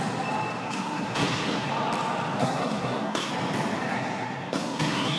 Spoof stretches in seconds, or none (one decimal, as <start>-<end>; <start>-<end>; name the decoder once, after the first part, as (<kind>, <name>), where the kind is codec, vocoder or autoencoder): 0.6-1.7 (codec, SNAC); 2.4-3.3; 3.9-5.2